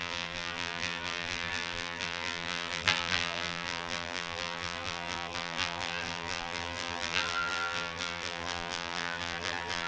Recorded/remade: remade